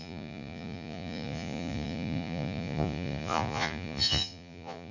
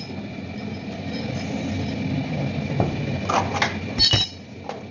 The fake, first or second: first